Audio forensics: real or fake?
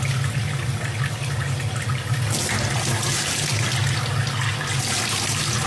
real